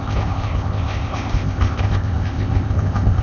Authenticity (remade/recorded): remade